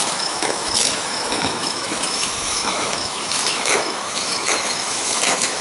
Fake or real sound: fake